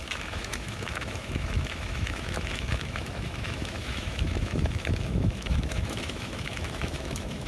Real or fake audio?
fake